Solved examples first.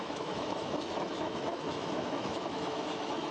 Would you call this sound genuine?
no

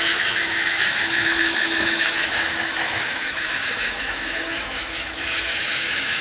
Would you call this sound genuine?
no